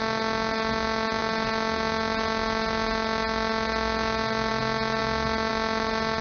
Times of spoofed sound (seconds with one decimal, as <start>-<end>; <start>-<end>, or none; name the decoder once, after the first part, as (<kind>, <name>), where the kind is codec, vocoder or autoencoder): none